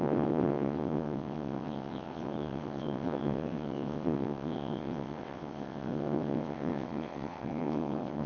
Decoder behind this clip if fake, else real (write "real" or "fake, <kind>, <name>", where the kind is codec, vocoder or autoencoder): fake, vocoder, WaveNeXt